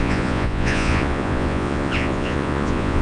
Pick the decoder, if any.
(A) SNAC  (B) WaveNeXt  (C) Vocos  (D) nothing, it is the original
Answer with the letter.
C